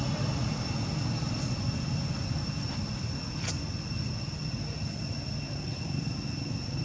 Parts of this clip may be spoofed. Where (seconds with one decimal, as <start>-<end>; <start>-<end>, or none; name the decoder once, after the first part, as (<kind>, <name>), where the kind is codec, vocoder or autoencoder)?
none